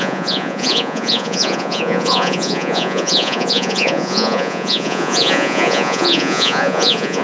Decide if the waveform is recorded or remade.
remade